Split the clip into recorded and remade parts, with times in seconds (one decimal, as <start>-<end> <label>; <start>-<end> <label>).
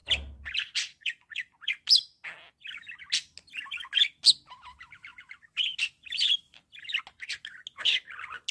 0.0-8.5 recorded